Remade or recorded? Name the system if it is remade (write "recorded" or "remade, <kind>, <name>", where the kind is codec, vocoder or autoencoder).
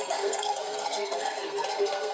remade, codec, SNAC